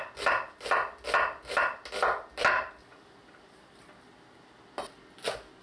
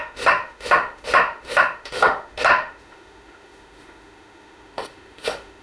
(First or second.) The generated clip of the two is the second